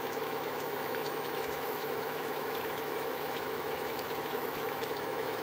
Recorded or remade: remade